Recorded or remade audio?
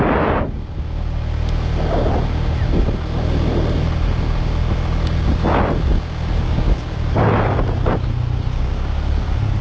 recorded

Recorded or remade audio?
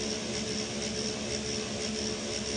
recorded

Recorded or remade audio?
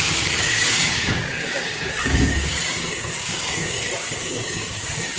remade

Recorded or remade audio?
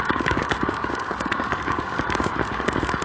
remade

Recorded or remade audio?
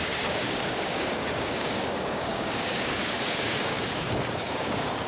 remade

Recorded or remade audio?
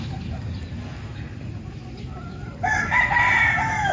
recorded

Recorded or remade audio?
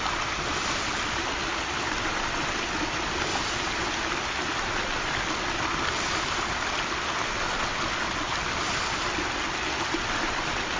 recorded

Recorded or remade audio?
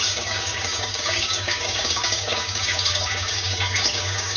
remade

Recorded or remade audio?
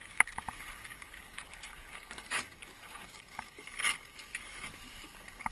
remade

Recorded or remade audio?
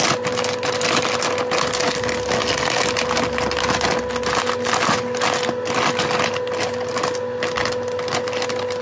recorded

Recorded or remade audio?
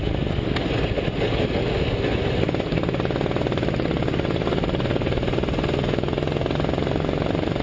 recorded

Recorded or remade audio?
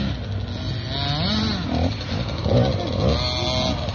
recorded